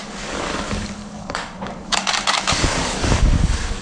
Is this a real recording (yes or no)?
no